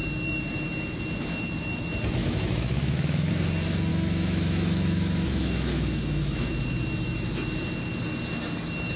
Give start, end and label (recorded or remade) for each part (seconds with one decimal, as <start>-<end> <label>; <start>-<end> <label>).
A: 0.0-2.2 recorded; 2.2-3.3 remade; 3.3-3.9 recorded; 3.9-6.5 remade; 6.5-9.0 recorded